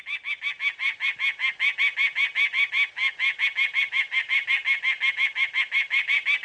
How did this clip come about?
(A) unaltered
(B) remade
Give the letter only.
A